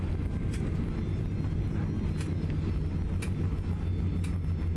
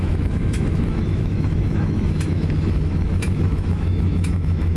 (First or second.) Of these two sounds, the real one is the first